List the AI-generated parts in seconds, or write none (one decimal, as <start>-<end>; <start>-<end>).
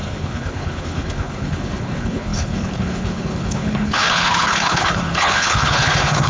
0.0-6.3